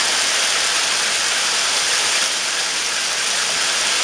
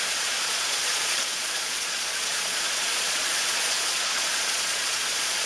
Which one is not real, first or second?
second